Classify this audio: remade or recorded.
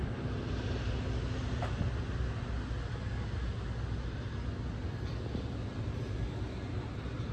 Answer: recorded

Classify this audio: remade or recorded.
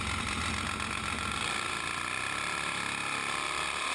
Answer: recorded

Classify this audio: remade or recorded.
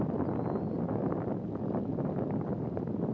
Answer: recorded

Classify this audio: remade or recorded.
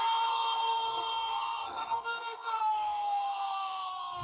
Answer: remade